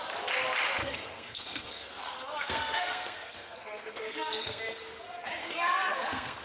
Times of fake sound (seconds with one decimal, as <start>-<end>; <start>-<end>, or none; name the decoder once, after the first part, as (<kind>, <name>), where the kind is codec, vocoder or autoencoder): 0.8-4.6 (codec, SNAC); 5.4-6.4